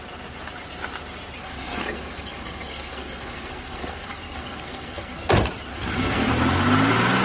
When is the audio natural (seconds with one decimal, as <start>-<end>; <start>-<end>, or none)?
0.0-1.4; 5.3-5.7; 6.3-7.2